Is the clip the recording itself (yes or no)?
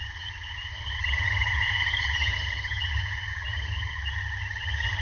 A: no